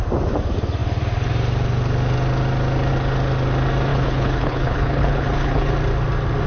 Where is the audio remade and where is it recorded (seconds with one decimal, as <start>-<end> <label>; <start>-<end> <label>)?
0.0-3.9 recorded; 3.9-5.7 remade; 5.7-6.5 recorded